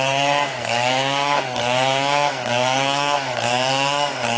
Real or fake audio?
fake